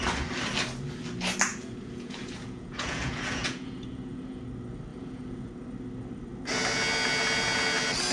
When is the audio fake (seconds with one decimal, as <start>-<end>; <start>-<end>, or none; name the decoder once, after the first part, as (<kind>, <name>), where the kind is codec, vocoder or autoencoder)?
1.5-4.4 (vocoder, Vocos); 4.9-5.5